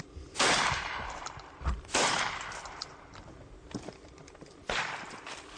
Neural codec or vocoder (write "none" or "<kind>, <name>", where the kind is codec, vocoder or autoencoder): none